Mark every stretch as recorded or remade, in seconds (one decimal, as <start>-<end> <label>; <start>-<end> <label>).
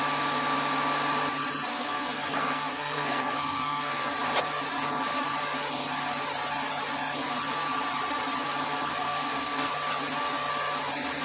0.0-1.7 recorded; 1.7-4.1 remade; 4.1-9.0 recorded; 9.0-9.7 remade; 9.7-11.2 recorded